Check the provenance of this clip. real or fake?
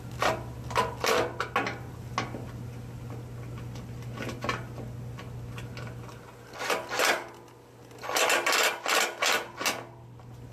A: real